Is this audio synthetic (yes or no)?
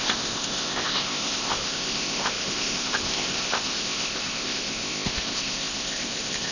yes